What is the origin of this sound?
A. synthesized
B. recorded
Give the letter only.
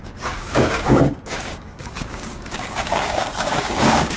A